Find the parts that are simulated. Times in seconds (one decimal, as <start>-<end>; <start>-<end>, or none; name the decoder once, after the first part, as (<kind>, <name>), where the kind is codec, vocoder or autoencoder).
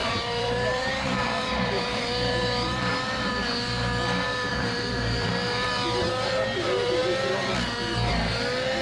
0.0-3.3 (vocoder, BigVGAN v2); 4.5-5.3